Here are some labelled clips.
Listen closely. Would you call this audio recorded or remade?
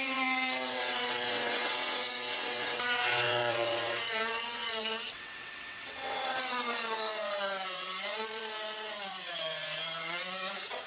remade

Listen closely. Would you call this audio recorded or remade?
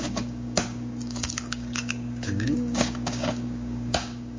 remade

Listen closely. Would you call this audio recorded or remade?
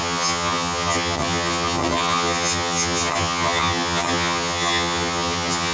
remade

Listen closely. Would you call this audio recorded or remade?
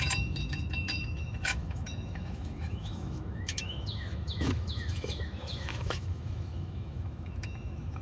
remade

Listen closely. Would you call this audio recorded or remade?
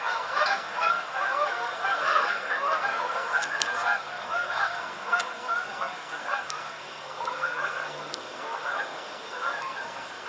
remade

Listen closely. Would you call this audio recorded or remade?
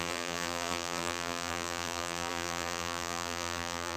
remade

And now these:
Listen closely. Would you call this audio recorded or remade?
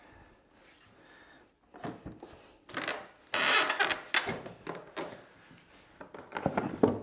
recorded